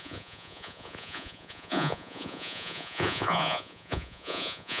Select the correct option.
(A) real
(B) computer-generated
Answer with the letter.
B